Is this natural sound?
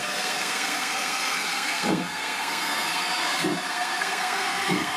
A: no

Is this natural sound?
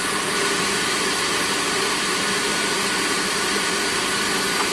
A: yes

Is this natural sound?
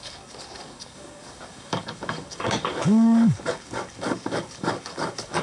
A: no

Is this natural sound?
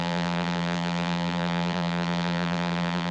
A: no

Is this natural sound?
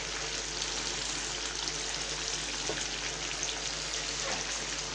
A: yes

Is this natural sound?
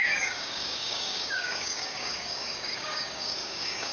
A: no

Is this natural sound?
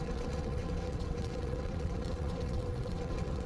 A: no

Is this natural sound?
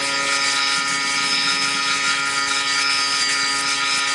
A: yes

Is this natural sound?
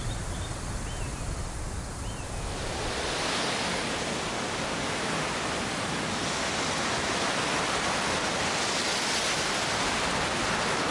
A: yes